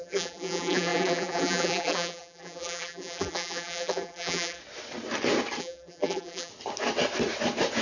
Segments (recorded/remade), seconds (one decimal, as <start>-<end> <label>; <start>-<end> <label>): 0.0-4.6 remade; 4.6-5.6 recorded; 5.6-6.5 remade; 6.5-7.8 recorded